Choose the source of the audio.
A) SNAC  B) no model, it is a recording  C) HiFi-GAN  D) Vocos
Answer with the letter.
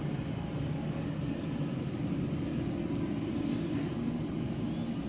B